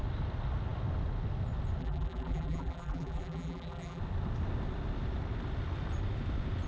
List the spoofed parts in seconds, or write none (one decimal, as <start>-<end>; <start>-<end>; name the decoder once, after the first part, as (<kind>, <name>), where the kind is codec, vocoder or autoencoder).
1.8-4.0 (vocoder, BigVGAN v2)

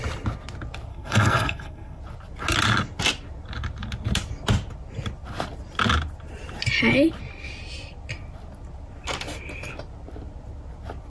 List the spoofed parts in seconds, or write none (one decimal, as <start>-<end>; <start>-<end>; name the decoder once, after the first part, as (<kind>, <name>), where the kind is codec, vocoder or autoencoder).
0.9-2.0 (codec, SNAC)

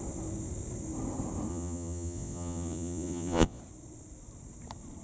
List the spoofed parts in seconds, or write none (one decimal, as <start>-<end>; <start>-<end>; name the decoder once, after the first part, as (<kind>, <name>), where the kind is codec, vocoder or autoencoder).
1.5-3.6 (vocoder, Vocos)

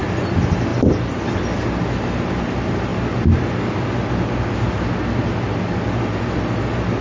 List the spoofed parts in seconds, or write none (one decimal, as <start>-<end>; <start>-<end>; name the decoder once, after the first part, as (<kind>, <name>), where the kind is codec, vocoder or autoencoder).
none

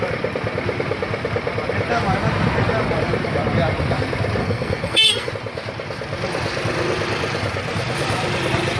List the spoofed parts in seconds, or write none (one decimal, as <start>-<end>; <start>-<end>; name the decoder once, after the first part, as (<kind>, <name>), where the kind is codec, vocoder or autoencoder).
4.4-5.3 (codec, SNAC)

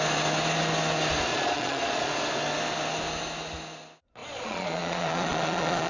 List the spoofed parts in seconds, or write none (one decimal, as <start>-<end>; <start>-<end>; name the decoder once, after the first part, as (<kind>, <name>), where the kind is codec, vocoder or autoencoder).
1.3-2.1 (vocoder, Vocos); 4.2-5.9

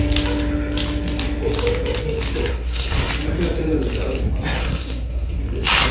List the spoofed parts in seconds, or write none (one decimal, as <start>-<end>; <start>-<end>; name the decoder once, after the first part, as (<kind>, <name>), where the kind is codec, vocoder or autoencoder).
2.5-3.1 (codec, SNAC); 4.6-5.4